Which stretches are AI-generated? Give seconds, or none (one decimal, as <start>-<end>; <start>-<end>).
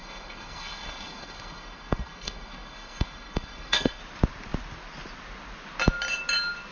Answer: 0.0-4.0